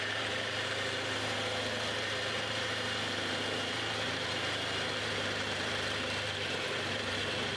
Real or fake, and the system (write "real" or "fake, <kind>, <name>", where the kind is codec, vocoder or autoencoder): fake, vocoder, BigVGAN v2